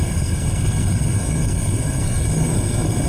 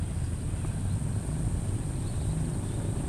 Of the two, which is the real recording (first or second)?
second